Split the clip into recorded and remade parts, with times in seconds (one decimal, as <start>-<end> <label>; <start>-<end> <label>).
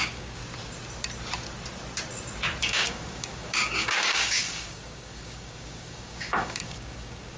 0.0-0.4 remade; 0.4-2.6 recorded; 2.6-7.4 remade